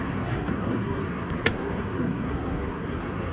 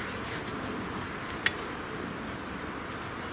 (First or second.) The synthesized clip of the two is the first